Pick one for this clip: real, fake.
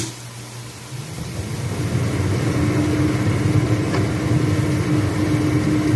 real